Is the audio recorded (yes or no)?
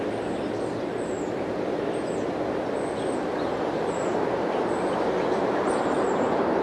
yes